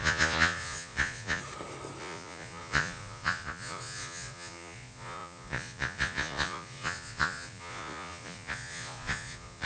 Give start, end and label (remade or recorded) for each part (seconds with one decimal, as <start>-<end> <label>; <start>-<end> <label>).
0.0-1.4 remade; 1.4-2.0 recorded; 2.0-9.7 remade

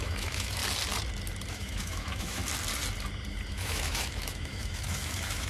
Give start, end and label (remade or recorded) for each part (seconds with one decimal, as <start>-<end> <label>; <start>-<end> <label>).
0.0-0.6 remade; 0.6-1.5 recorded; 1.5-2.4 remade; 2.4-3.5 recorded; 3.5-5.5 remade

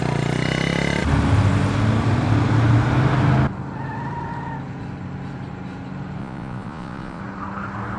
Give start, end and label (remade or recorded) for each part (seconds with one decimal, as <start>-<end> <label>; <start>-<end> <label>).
0.0-6.2 recorded; 6.2-7.2 remade; 7.2-8.0 recorded

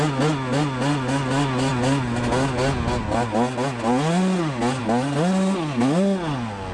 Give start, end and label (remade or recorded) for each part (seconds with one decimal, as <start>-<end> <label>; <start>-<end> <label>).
0.0-6.7 recorded

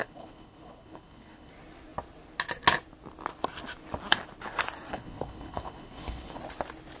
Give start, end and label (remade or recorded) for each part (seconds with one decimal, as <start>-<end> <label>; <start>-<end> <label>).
0.0-1.5 remade; 1.5-4.9 recorded; 4.9-6.4 remade; 6.4-7.0 recorded

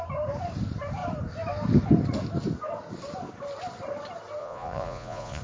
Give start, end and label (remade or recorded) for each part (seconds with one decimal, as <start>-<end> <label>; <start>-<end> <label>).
0.0-4.4 recorded; 4.4-5.4 remade

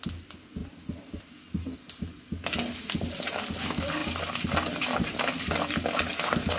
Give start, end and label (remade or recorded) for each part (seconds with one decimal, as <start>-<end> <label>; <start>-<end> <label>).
0.0-6.6 recorded

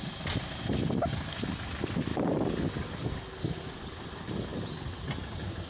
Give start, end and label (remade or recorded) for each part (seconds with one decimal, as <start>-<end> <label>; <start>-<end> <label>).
0.0-5.7 recorded